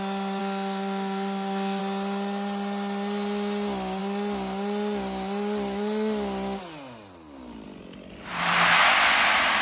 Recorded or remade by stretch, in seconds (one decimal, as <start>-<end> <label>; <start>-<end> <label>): 0.0-0.4 recorded; 0.4-1.8 remade; 1.8-9.6 recorded